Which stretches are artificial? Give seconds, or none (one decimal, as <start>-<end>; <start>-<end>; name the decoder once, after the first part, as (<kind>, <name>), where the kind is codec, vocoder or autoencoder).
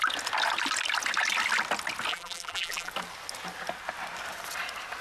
2.1-2.9 (vocoder, BigVGAN v2)